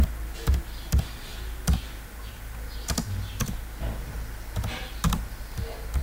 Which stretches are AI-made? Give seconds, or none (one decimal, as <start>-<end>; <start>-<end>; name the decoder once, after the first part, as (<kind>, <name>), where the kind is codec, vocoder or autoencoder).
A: none